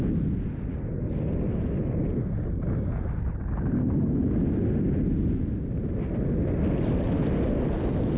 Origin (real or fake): real